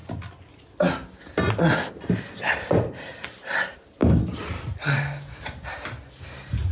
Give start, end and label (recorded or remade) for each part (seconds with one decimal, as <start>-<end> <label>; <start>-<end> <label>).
0.0-6.7 recorded

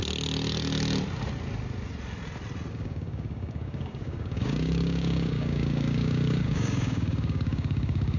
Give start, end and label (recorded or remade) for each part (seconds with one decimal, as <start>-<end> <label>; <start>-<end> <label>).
0.0-2.7 recorded; 2.7-8.2 remade

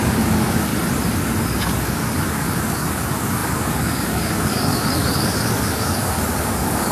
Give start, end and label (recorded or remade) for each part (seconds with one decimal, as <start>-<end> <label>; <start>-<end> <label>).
0.0-0.7 remade; 0.7-1.6 recorded; 1.6-6.9 remade

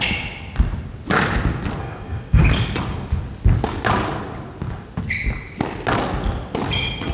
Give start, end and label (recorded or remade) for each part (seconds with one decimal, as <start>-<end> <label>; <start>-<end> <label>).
0.0-1.8 recorded; 1.8-2.4 remade; 2.4-7.1 recorded

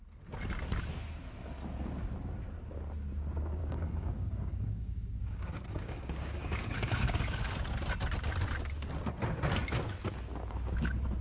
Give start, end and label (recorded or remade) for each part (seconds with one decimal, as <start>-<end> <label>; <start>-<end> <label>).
0.0-3.6 recorded; 3.6-7.4 remade; 7.4-11.2 recorded

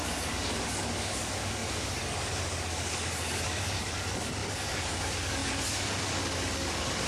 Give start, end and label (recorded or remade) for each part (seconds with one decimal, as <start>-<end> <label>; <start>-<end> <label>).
0.0-7.1 remade

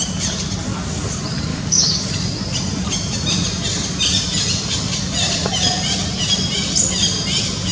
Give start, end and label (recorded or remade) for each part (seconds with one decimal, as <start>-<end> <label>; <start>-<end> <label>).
0.0-1.5 recorded; 1.5-2.1 remade; 2.1-7.7 recorded